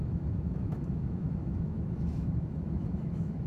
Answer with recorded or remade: remade